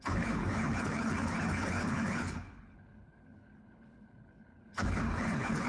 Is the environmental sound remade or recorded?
remade